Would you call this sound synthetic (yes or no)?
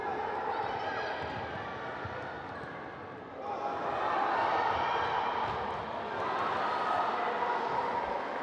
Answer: no